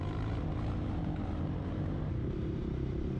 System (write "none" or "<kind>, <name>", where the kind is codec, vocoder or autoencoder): vocoder, BigVGAN v2